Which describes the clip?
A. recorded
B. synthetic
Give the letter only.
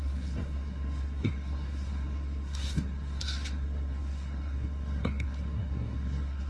B